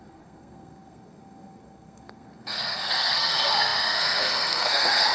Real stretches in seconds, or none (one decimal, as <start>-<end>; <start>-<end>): none